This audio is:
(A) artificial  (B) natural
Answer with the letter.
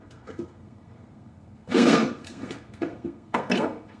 A